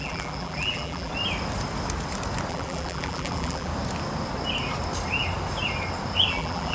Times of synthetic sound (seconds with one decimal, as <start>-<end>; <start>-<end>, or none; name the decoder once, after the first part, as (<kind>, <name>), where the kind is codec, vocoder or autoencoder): 0.0-1.1 (vocoder, BigVGAN v2); 2.5-3.7; 6.3-6.7